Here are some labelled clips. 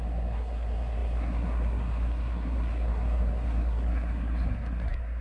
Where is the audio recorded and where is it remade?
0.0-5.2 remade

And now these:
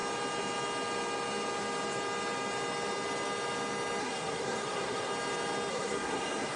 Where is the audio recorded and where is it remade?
0.0-4.0 recorded; 4.0-5.1 remade; 5.1-5.7 recorded; 5.7-6.6 remade

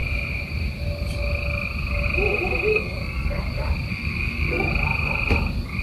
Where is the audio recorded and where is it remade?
0.0-2.7 recorded; 2.7-3.4 remade; 3.4-3.9 recorded; 3.9-4.7 remade; 4.7-5.8 recorded

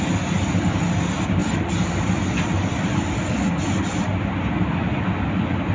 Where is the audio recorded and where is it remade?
0.0-5.7 recorded

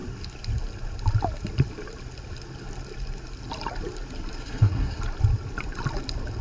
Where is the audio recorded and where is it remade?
0.0-4.4 recorded; 4.4-5.0 remade; 5.0-6.4 recorded